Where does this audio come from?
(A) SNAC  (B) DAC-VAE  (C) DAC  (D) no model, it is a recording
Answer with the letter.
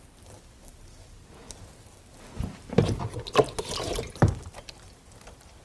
D